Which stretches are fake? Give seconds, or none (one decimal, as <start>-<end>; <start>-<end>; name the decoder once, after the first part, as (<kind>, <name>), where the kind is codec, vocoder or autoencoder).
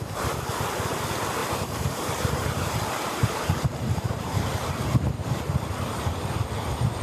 1.4-4.7 (vocoder, BigVGAN v2)